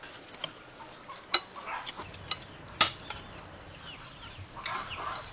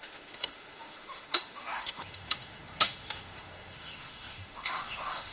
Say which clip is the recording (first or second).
first